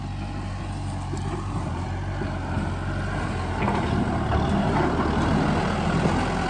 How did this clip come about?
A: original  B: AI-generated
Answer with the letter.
A